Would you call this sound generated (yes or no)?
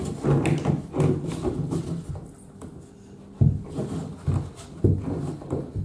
no